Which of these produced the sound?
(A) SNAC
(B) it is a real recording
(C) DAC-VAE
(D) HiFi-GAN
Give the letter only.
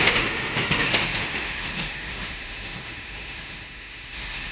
C